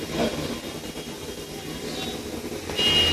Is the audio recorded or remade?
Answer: recorded